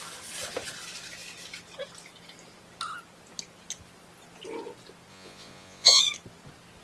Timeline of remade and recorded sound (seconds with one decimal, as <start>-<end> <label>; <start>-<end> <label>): 0.0-5.1 recorded; 5.1-6.0 remade; 6.0-6.8 recorded